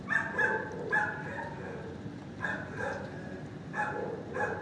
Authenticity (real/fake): real